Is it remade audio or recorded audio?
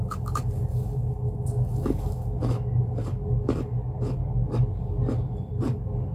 remade